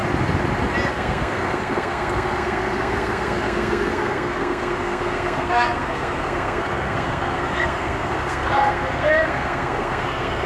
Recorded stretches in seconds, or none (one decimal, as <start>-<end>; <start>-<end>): 0.0-0.9